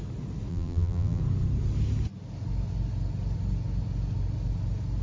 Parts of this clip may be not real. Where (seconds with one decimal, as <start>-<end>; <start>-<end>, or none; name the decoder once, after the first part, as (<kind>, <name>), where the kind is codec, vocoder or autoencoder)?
0.5-1.2 (vocoder, BigVGAN v2)